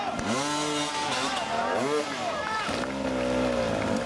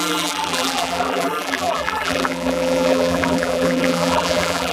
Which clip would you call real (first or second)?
first